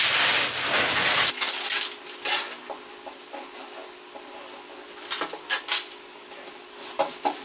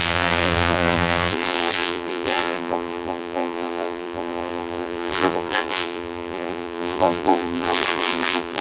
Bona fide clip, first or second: first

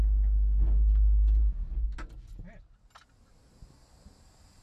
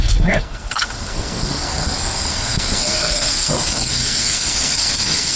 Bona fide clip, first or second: first